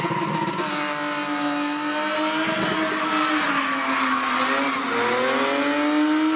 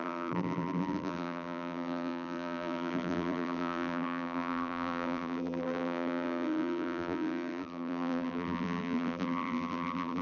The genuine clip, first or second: first